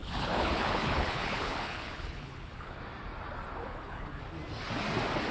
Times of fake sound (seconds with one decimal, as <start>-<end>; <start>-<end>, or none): 0.0-2.8; 3.6-4.2